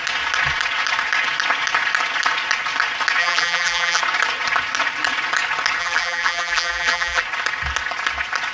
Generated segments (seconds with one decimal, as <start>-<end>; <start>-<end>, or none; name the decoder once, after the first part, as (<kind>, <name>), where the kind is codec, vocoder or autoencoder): 3.2-4.0 (vocoder, BigVGAN v2); 5.8-7.2